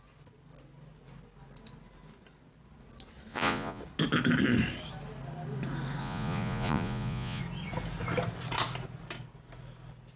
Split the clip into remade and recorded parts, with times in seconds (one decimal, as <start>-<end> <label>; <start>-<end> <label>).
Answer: 0.0-3.3 recorded; 3.3-3.8 remade; 3.8-6.0 recorded; 6.0-7.4 remade; 7.4-10.2 recorded